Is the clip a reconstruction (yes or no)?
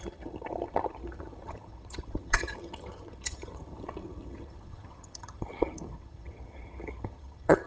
yes